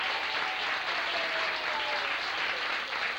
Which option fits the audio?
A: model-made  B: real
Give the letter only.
B